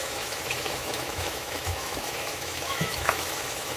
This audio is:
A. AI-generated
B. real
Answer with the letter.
A